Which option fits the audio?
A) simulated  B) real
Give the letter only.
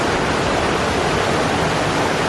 B